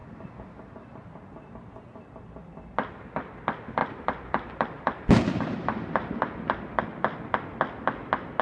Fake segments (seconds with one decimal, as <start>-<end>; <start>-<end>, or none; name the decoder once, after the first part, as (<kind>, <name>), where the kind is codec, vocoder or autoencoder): 3.8-6.8 (vocoder, BigVGAN v2)